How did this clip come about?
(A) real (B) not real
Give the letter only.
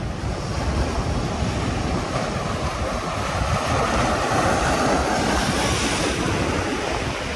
A